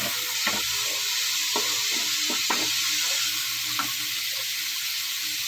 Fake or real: real